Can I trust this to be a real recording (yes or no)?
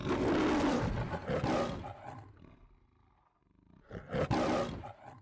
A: yes